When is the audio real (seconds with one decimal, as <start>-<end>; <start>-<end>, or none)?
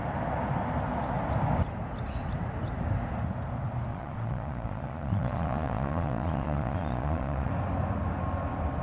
0.0-3.9; 7.5-8.8